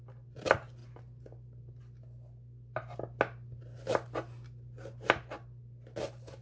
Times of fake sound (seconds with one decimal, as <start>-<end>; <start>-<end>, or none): none